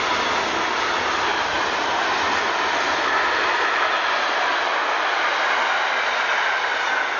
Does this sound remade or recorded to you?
recorded